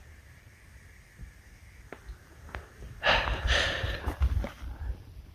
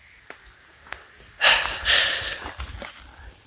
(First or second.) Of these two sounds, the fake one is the first